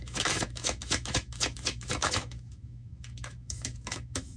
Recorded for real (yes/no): no